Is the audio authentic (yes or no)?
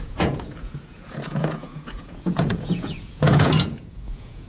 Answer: no